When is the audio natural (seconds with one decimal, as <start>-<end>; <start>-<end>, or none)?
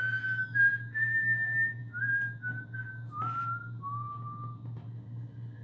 0.0-5.6